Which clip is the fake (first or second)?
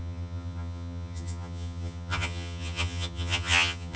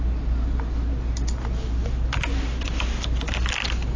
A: first